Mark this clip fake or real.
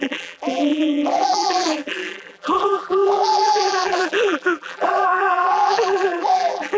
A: fake